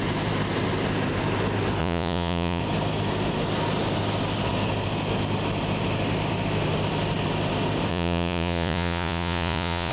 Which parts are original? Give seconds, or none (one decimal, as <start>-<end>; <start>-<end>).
0.0-1.8; 2.6-7.9